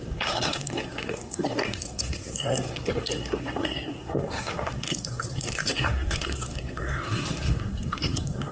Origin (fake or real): fake